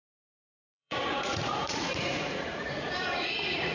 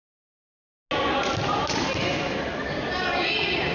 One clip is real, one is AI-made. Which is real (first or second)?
second